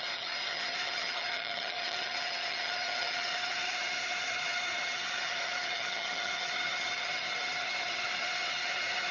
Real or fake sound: fake